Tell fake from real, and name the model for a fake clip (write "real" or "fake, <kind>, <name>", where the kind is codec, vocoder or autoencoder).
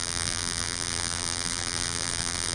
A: fake, vocoder, BigVGAN v2